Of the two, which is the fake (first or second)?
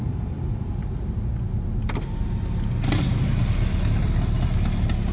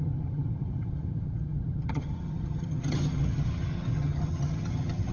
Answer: second